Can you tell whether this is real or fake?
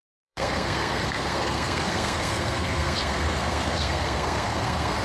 fake